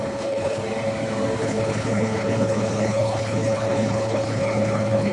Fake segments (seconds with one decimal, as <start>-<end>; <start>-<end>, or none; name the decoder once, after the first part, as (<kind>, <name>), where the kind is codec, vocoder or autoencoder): 0.0-0.6 (codec, HILCodec); 1.4-5.1